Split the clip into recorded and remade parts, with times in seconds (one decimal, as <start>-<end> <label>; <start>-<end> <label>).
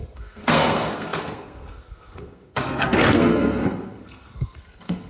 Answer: 0.0-5.1 remade